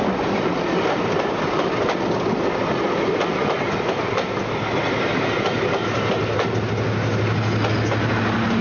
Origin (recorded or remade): recorded